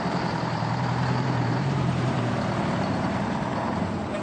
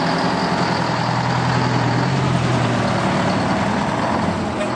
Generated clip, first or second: first